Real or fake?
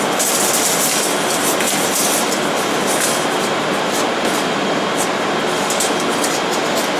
real